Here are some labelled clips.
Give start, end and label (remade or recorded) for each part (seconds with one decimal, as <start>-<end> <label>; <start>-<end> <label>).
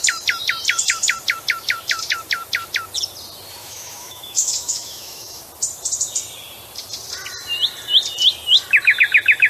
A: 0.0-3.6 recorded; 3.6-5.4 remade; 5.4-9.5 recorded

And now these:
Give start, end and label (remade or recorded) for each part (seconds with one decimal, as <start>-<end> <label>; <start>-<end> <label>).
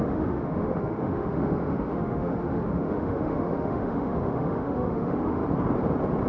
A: 0.0-5.4 remade; 5.4-6.3 recorded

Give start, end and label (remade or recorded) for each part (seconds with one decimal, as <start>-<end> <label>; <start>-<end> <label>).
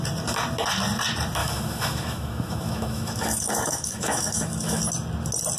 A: 0.0-1.4 recorded; 1.4-4.8 remade; 4.8-5.6 recorded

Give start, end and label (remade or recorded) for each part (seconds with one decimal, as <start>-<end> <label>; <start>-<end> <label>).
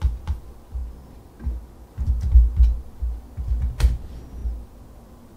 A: 0.0-5.4 recorded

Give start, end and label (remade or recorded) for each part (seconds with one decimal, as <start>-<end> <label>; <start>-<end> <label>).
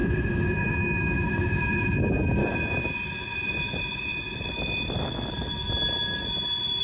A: 0.0-2.4 remade; 2.4-6.8 recorded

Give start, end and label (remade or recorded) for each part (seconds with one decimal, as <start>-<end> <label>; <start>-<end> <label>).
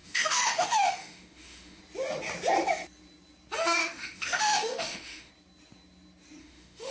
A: 0.0-1.8 remade; 1.8-3.8 recorded; 3.8-5.3 remade; 5.3-6.4 recorded; 6.4-6.9 remade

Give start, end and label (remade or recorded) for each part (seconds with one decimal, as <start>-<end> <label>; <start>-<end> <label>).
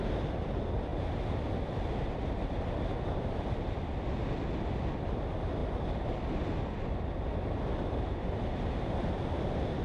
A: 0.0-9.8 recorded